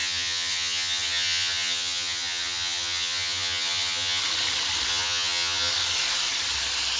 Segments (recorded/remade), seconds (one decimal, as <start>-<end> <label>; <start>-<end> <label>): 0.0-4.2 remade; 4.2-4.9 recorded; 4.9-5.7 remade; 5.7-7.0 recorded